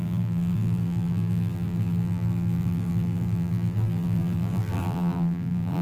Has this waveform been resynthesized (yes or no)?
yes